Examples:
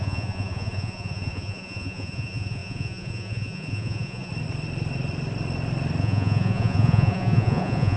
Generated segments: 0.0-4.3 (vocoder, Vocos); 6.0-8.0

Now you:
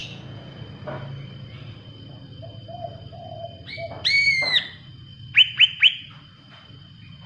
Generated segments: 0.0-0.6 (vocoder, Vocos)

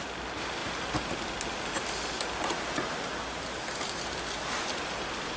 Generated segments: none

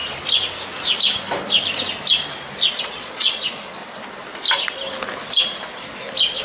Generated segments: 2.8-3.8 (vocoder, Vocos)

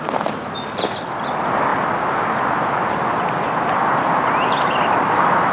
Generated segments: none

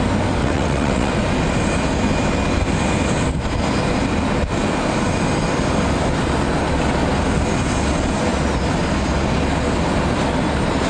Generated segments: 0.4-1.1 (vocoder, WaveNeXt)

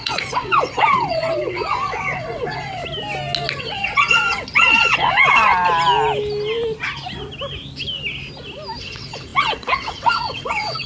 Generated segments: 0.0-2.8 (vocoder, WaveNeXt); 3.6-5.5; 8.8-10.9